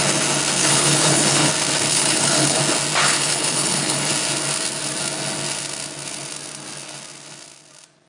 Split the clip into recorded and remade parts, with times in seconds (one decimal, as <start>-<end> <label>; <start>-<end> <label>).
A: 0.0-0.6 recorded; 0.6-1.5 remade; 1.5-1.9 recorded; 1.9-2.6 remade; 2.6-3.0 recorded; 3.0-4.1 remade; 4.1-8.1 recorded